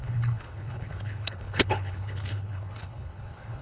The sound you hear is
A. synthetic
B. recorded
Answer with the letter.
A